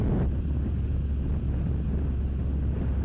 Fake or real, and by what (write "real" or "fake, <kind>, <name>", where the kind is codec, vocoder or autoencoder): real